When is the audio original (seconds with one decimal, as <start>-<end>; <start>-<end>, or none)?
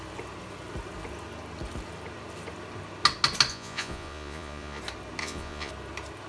0.0-3.5; 4.8-5.2; 5.7-6.3